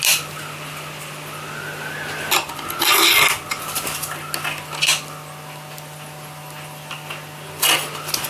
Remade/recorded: recorded